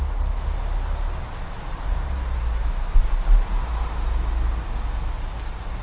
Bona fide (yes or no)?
yes